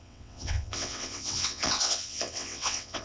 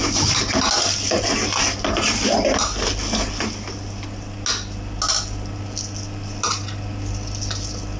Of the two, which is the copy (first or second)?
first